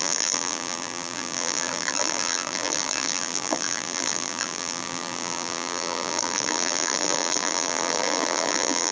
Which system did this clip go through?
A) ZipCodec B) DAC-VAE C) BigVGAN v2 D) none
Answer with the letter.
C